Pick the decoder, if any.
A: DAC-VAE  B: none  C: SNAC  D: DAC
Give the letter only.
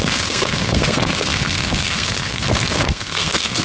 C